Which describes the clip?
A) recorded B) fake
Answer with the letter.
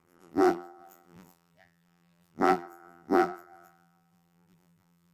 B